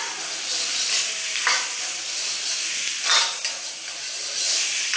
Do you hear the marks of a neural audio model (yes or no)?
no